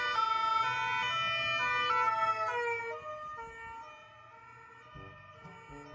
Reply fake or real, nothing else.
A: real